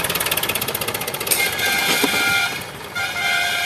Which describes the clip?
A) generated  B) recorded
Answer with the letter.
B